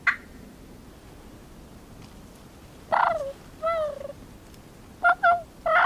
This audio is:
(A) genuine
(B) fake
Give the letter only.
A